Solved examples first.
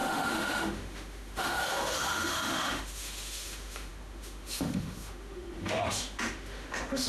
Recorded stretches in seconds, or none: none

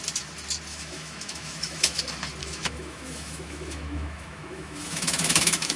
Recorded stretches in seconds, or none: 0.0-0.7; 2.0-2.4

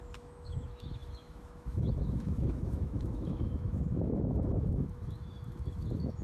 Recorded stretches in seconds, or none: none

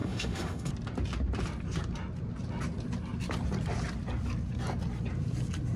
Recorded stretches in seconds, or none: 0.7-5.8

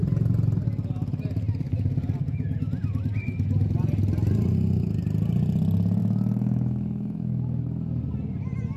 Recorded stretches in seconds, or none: 0.0-6.0; 7.6-8.8

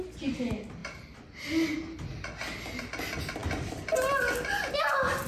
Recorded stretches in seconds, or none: 0.0-5.3

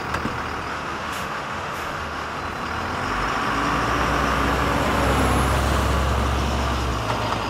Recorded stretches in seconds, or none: 0.0-0.7; 2.4-7.5

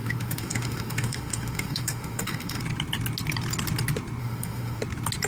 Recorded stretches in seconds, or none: 2.6-4.2; 4.8-5.3